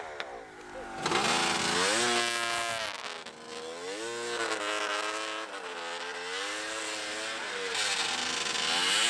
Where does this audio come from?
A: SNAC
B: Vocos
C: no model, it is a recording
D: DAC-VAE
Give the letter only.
C